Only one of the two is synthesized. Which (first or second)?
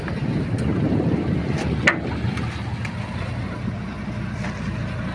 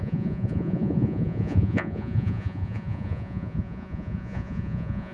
second